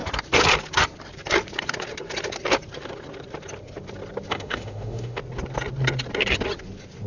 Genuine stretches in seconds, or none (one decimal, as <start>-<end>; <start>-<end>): 0.0-4.3; 5.2-7.1